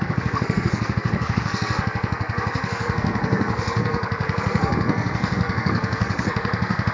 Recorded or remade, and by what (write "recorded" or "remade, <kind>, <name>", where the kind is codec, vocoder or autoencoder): remade, codec, SNAC